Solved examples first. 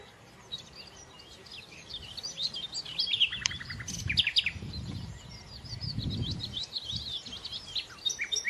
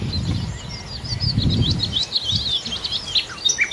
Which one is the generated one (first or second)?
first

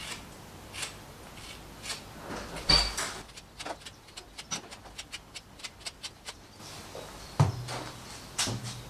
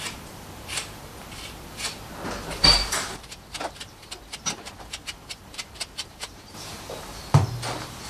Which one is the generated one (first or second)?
second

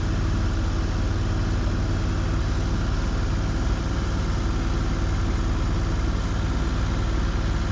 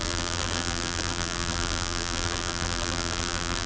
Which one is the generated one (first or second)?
second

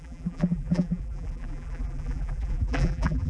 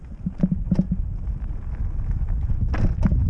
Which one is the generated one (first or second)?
first